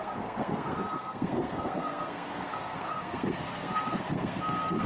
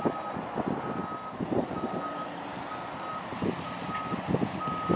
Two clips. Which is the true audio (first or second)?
second